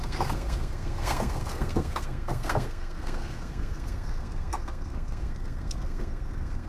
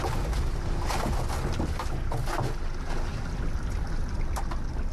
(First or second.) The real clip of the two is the second